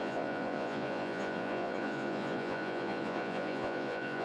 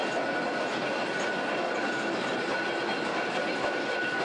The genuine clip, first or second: second